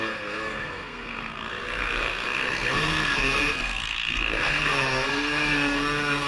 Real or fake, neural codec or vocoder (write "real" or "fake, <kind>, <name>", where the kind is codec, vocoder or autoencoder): fake, codec, SNAC